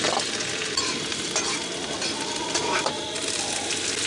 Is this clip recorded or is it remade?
recorded